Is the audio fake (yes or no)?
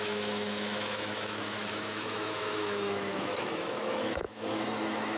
yes